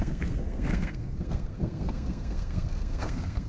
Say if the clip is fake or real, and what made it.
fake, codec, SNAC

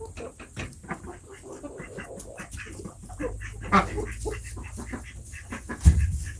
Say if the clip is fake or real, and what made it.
real